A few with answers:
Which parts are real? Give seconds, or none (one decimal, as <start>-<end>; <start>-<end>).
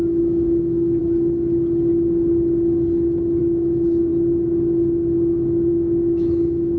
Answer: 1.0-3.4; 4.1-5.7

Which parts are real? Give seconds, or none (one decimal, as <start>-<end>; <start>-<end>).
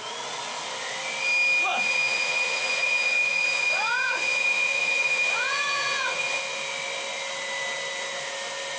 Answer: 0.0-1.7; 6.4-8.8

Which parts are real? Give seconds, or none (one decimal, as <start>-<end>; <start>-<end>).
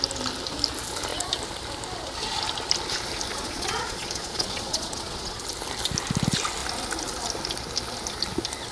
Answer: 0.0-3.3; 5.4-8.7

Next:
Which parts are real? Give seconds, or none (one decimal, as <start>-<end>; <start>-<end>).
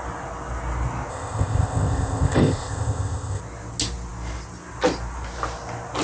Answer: 0.0-1.1; 3.4-6.0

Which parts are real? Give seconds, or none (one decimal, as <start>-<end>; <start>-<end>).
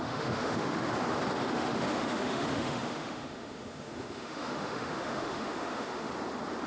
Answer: 0.9-1.5; 6.1-6.7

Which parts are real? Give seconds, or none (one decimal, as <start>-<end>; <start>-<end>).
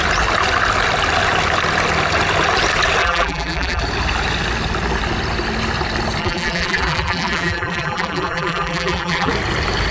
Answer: 0.0-3.0; 3.8-6.2; 9.3-9.9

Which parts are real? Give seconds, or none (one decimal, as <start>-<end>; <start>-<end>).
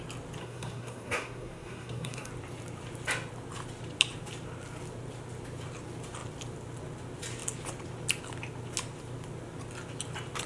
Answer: 0.0-0.4; 2.3-10.5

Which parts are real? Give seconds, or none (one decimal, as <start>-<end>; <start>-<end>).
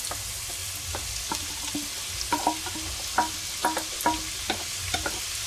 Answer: 0.0-5.5